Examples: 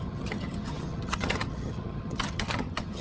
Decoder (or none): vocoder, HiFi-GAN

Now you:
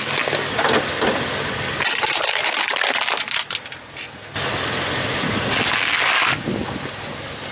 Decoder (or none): none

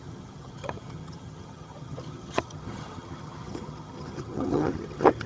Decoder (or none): vocoder, HiFi-GAN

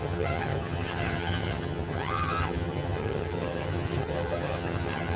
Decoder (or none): vocoder, HiFi-GAN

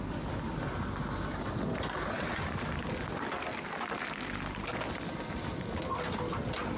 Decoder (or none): none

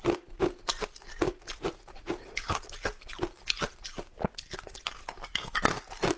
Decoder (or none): none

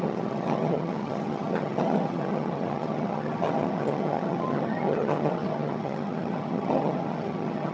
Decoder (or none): vocoder, HiFi-GAN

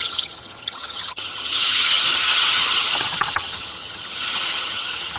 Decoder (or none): vocoder, HiFi-GAN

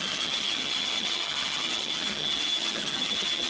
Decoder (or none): vocoder, HiFi-GAN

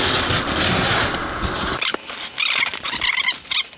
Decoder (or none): none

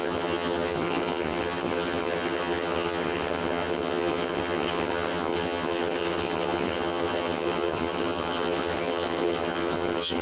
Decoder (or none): vocoder, HiFi-GAN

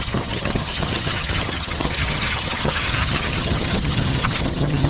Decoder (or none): vocoder, HiFi-GAN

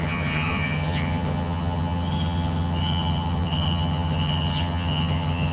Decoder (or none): vocoder, HiFi-GAN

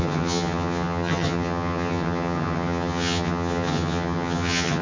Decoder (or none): vocoder, HiFi-GAN